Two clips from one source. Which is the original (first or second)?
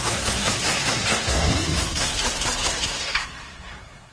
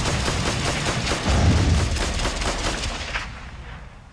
second